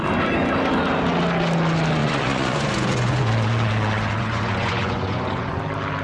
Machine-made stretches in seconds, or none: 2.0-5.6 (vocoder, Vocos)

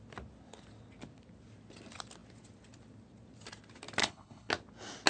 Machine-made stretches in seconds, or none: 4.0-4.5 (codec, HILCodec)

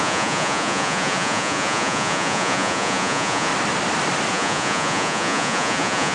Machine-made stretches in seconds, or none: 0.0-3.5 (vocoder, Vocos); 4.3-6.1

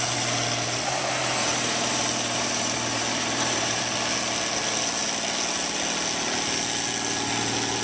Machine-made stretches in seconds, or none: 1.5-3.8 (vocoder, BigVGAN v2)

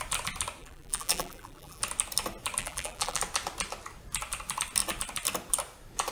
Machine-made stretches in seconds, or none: 0.6-1.8 (vocoder, BigVGAN v2); 2.6-3.2

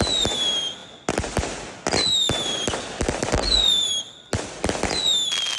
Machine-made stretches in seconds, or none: none